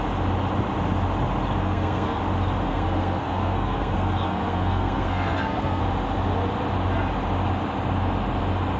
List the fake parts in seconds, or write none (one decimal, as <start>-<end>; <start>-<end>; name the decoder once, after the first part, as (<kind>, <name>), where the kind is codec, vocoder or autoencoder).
1.6-2.2 (codec, SNAC); 2.7-5.8